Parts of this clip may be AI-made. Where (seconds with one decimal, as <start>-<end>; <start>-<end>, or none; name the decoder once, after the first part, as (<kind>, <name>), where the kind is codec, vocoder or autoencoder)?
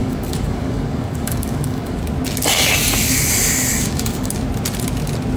0.0-2.0 (codec, DAC); 3.7-4.3